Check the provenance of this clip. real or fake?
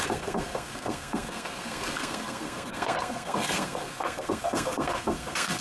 fake